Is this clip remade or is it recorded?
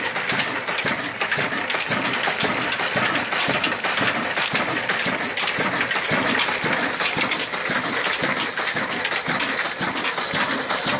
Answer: recorded